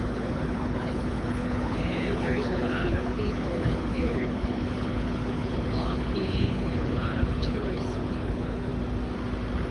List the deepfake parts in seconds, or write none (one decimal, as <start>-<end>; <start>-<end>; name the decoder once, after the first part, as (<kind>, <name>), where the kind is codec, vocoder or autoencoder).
0.0-8.7 (codec, HILCodec)

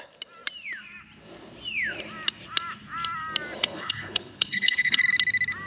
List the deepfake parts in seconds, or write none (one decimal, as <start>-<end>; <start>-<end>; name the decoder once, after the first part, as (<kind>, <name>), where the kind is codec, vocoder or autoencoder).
3.6-5.0 (codec, HILCodec)

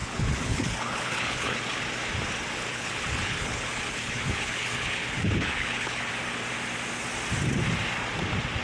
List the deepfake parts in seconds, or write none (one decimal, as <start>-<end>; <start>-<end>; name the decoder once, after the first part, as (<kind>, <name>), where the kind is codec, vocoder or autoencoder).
0.0-1.8 (codec, HILCodec); 2.7-6.1